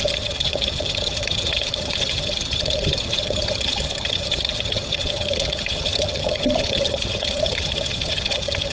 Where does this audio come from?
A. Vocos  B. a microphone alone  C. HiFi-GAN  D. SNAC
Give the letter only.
C